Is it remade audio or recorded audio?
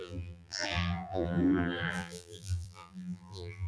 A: remade